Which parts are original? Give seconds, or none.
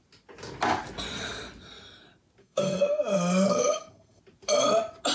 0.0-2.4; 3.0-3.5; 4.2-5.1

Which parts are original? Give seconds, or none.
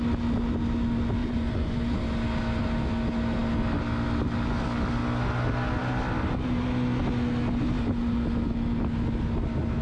0.0-1.2; 1.8-9.8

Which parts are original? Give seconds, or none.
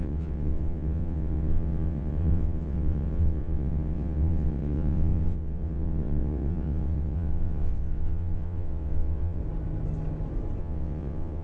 9.4-10.6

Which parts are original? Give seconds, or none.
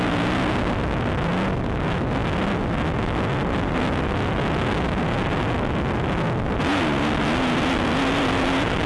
0.0-8.9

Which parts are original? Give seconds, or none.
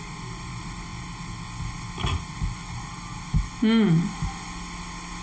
0.0-5.2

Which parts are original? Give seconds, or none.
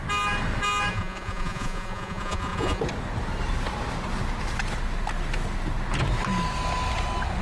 0.0-0.9; 2.8-7.4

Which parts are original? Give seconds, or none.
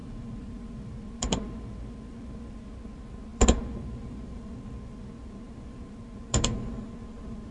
2.5-3.3; 6.6-7.5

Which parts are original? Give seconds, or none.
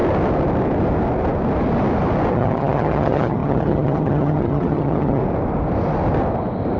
0.0-2.3; 5.2-6.8